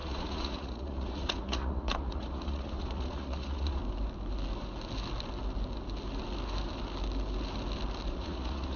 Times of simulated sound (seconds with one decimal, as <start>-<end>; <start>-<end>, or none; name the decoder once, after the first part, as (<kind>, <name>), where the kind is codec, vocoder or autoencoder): 0.0-3.8 (vocoder, Vocos); 8.1-8.8

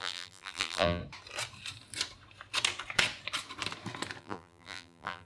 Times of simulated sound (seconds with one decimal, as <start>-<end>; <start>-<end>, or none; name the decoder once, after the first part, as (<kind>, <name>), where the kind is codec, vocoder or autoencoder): 0.0-1.0 (vocoder, BigVGAN v2); 4.2-5.3

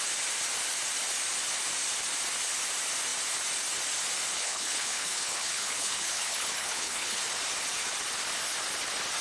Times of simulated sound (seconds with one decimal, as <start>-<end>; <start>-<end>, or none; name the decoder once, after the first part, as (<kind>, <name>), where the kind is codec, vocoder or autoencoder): 4.4-7.2 (codec, HILCodec)

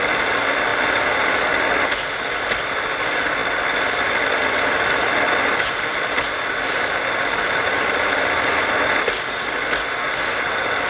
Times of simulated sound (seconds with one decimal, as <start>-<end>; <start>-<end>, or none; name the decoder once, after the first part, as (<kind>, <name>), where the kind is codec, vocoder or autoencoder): none

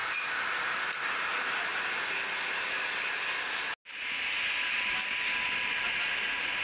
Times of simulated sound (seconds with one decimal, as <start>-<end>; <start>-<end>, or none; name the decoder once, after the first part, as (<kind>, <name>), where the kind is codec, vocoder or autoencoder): none